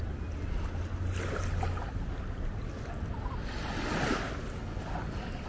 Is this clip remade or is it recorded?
recorded